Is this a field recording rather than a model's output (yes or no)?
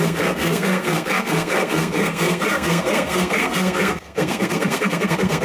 no